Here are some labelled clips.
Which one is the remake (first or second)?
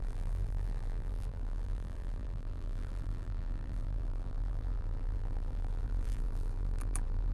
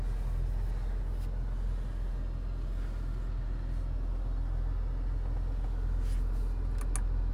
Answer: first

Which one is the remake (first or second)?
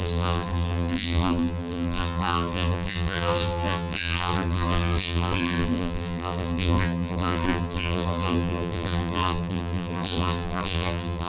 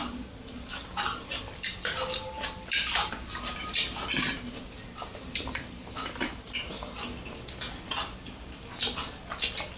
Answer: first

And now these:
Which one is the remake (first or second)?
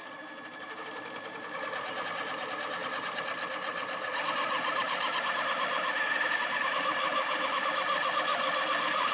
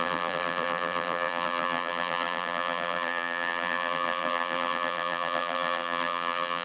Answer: second